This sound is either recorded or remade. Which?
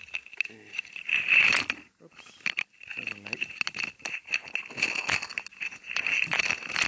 recorded